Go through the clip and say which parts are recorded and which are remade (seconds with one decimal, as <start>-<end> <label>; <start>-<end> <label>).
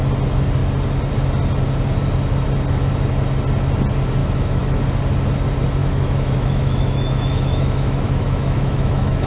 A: 0.0-4.2 recorded; 4.2-4.8 remade; 4.8-5.8 recorded; 5.8-9.3 remade